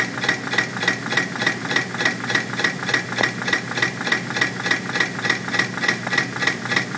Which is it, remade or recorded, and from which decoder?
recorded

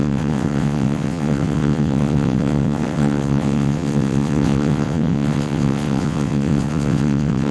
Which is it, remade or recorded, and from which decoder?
remade, vocoder, WaveNeXt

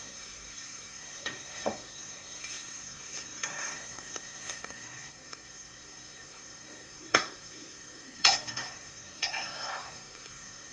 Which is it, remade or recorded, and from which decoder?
remade, codec, SNAC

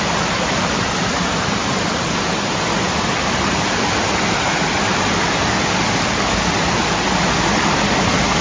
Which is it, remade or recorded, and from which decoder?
recorded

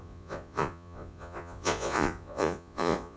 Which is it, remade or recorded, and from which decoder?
remade, vocoder, Vocos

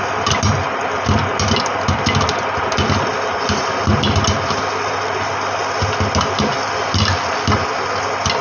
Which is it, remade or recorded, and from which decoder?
recorded